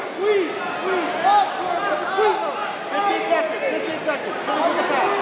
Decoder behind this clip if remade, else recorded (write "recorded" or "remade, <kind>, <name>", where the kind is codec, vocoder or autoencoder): recorded